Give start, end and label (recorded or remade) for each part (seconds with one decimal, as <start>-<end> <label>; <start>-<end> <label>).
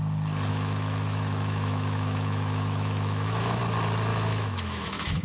0.0-0.5 recorded; 0.5-3.6 remade; 3.6-4.1 recorded; 4.1-5.2 remade